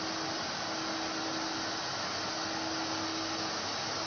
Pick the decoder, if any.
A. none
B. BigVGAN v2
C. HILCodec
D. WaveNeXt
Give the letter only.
A